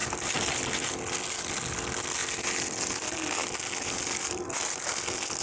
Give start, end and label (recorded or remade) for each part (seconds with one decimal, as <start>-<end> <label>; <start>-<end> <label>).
0.0-5.4 recorded